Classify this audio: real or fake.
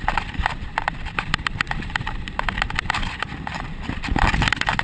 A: fake